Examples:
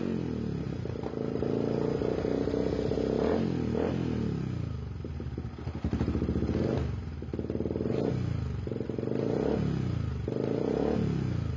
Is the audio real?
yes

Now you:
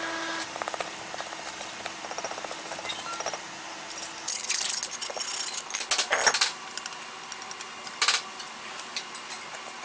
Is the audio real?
yes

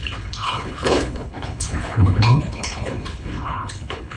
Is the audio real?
no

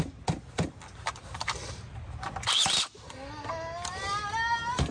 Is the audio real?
yes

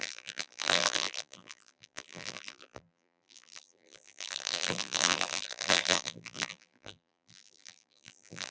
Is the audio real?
no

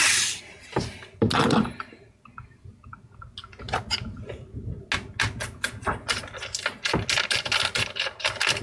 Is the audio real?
yes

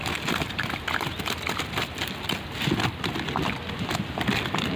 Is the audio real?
yes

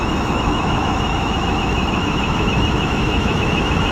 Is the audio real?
no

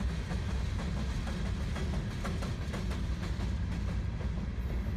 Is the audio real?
yes